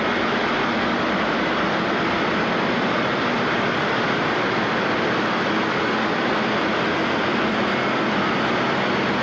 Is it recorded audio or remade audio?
recorded